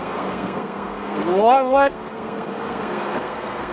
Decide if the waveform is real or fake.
fake